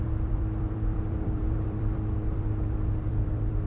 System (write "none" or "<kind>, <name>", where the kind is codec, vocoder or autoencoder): vocoder, BigVGAN v2